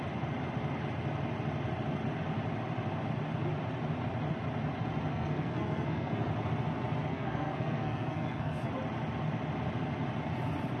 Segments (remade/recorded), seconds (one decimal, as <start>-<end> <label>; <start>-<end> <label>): 0.0-5.1 recorded; 5.1-6.3 remade; 6.3-7.1 recorded; 7.1-8.7 remade; 8.7-10.8 recorded